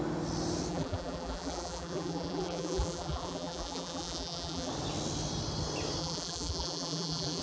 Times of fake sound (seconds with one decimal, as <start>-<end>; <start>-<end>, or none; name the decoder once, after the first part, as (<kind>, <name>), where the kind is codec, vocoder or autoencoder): 0.7-4.7 (vocoder, BigVGAN v2); 6.0-7.4